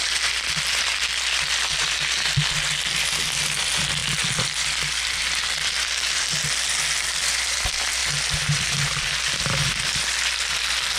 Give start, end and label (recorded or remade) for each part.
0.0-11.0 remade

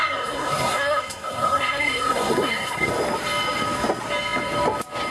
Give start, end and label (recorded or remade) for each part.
0.0-2.9 remade; 2.9-5.1 recorded

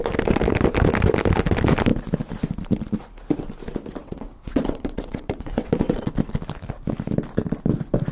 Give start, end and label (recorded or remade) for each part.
0.0-4.0 recorded; 4.0-6.1 remade; 6.1-8.1 recorded

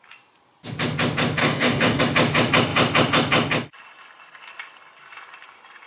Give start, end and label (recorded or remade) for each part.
0.0-1.4 recorded; 1.4-2.0 remade; 2.0-5.9 recorded

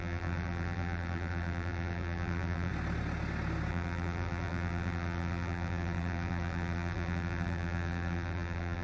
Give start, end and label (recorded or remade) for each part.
0.0-2.7 remade; 2.7-3.7 recorded; 3.7-8.8 remade

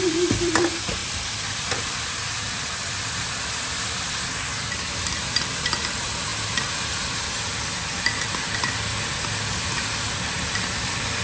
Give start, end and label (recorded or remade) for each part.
0.0-6.3 remade; 6.3-10.1 recorded; 10.1-11.2 remade